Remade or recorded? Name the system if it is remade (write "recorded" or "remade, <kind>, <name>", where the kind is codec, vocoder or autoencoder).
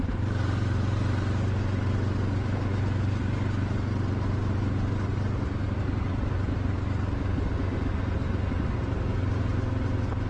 recorded